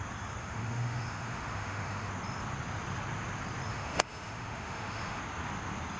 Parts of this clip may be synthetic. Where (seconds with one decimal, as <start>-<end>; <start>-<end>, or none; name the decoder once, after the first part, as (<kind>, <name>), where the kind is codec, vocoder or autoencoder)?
0.4-2.1 (autoencoder, DAC-VAE); 3.7-5.2